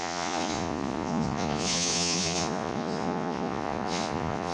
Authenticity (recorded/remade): remade